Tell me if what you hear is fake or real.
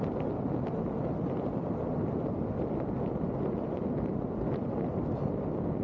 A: real